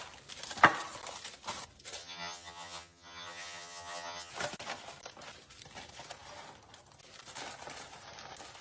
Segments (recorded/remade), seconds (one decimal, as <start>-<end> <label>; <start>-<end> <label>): 0.0-2.0 recorded; 2.0-4.3 remade; 4.3-8.6 recorded